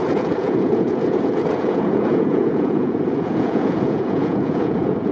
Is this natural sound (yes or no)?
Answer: no